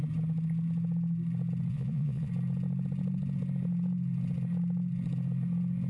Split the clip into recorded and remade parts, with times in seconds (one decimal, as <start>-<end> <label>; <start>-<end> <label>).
0.0-1.7 recorded; 1.7-2.3 remade; 2.3-5.9 recorded